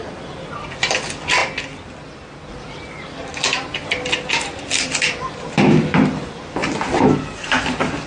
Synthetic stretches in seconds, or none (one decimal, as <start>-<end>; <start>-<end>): none